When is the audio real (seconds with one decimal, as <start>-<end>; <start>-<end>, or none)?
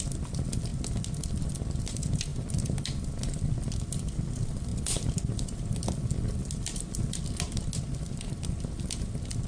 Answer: 0.0-9.5